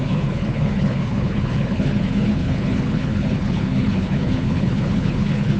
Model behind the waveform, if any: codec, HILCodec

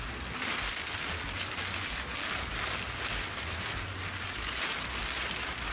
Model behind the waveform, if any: none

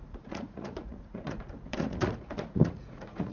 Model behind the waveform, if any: vocoder, Vocos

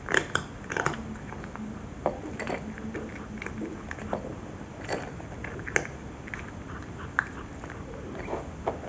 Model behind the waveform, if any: none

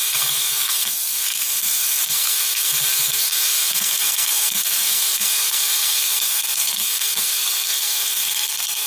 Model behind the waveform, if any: codec, SNAC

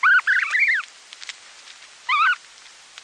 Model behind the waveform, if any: none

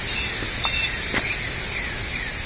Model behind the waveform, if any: none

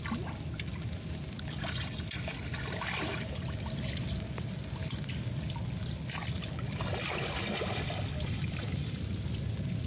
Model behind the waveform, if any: none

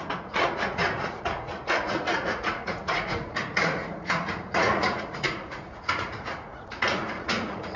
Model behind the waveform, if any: vocoder, Vocos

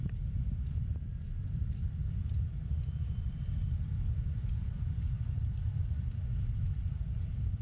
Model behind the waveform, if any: vocoder, BigVGAN v2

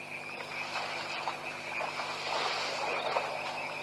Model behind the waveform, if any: none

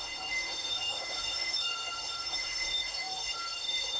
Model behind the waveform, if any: autoencoder, DAC-VAE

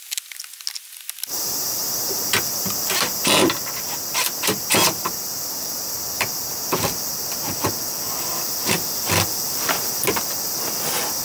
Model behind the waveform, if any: none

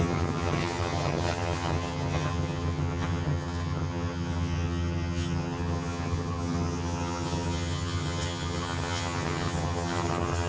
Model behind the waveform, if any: vocoder, HiFi-GAN